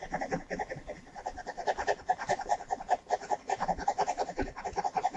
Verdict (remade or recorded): recorded